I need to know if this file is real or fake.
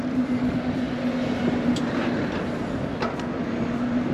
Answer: real